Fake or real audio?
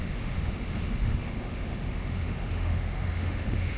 fake